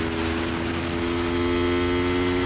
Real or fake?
real